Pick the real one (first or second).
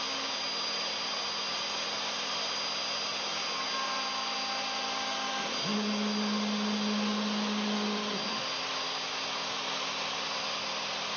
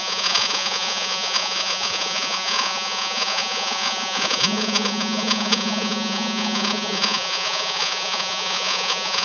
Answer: first